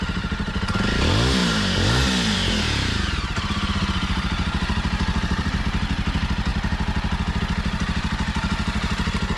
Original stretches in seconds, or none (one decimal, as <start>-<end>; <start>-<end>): 0.0-1.4; 5.6-9.4